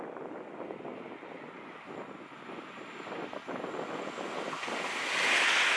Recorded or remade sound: recorded